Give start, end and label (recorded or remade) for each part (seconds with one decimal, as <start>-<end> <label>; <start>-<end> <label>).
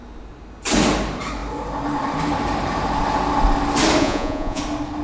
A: 0.0-4.0 recorded; 4.0-4.6 remade; 4.6-5.0 recorded